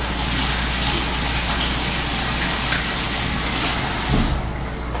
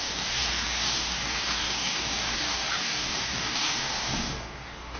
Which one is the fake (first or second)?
second